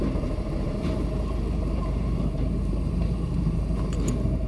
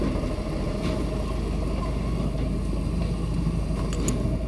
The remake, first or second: first